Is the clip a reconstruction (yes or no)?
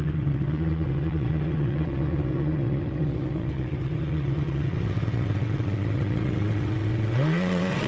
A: yes